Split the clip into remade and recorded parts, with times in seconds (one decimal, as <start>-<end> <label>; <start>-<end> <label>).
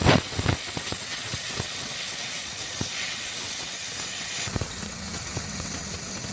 0.0-6.3 remade